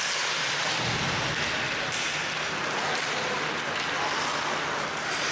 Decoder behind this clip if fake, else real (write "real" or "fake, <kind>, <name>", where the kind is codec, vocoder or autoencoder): real